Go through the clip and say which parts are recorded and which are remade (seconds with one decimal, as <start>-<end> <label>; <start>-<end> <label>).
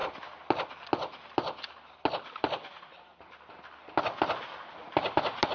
0.0-5.5 recorded